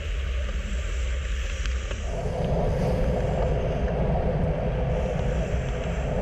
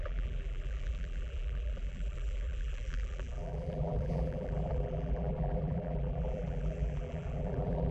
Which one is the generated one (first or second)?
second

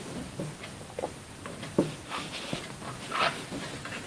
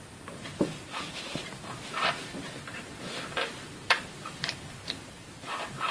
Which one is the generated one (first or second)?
second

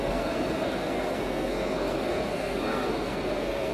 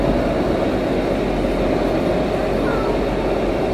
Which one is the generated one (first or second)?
first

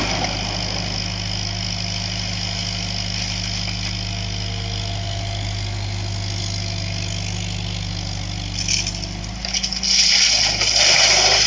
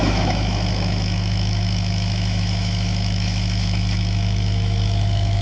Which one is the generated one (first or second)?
second